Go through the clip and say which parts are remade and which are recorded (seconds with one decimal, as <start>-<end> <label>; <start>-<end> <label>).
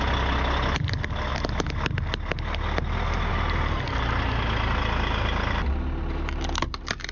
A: 0.0-7.1 recorded